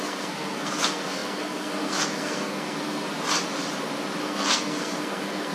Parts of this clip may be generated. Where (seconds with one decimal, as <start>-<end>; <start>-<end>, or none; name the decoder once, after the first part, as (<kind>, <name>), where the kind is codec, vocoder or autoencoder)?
0.0-3.1 (codec, SNAC); 4.2-5.5

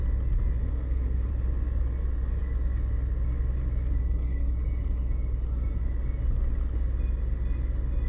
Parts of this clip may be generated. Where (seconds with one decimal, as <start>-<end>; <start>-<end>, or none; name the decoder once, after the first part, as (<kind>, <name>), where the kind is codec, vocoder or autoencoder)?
0.6-1.3 (codec, SNAC)